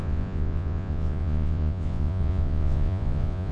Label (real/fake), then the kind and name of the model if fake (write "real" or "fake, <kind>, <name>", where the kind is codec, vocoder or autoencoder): fake, vocoder, Vocos